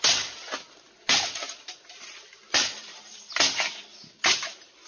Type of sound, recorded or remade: recorded